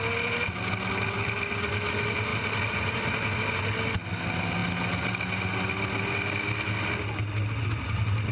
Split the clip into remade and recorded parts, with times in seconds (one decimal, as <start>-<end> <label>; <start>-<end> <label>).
0.0-8.3 recorded